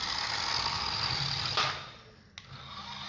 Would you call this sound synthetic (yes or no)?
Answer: no